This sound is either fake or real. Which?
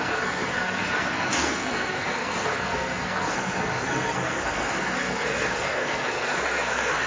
fake